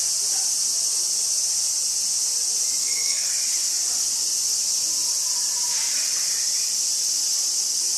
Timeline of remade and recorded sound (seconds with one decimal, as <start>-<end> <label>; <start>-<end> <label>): 0.0-2.8 recorded; 2.8-3.3 remade; 3.3-8.0 recorded